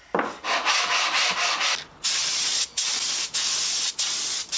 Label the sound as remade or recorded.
recorded